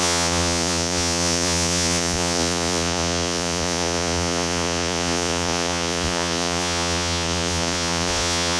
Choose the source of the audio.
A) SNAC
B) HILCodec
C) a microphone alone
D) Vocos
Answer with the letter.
D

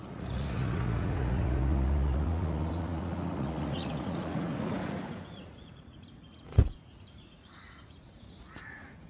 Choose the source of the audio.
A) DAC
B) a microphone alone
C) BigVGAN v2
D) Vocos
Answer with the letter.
D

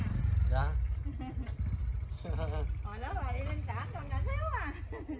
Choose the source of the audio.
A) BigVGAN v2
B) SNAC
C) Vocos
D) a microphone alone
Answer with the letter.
D